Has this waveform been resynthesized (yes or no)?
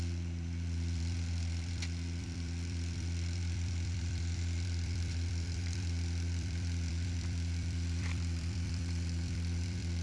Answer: yes